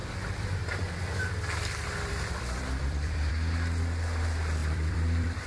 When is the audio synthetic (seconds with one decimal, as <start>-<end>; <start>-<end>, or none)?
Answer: 0.0-3.3; 4.6-5.5